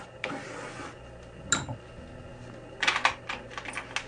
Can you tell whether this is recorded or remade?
recorded